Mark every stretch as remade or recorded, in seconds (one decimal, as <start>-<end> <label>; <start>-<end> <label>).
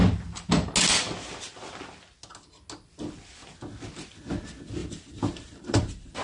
0.0-4.8 recorded; 4.8-6.2 remade